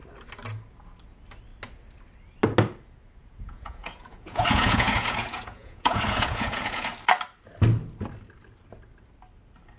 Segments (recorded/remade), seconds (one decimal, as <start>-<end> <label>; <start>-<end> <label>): 0.0-3.2 recorded; 3.2-6.9 remade; 6.9-9.8 recorded